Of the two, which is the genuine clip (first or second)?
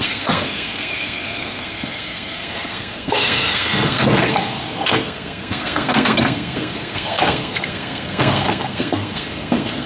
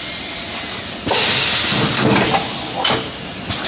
second